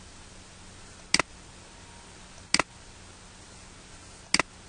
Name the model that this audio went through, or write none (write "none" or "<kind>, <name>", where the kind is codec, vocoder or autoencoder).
none